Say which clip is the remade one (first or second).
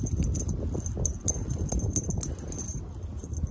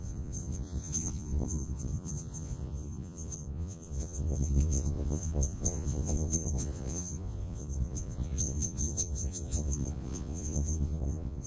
second